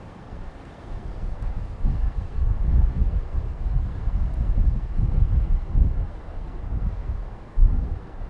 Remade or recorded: remade